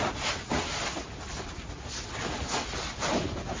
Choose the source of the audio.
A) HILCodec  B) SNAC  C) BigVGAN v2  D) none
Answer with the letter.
D